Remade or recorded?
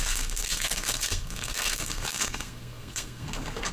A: remade